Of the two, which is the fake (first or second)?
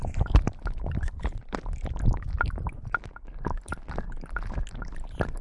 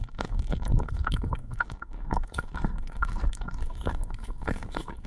second